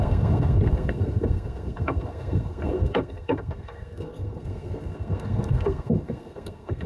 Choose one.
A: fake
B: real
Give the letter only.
A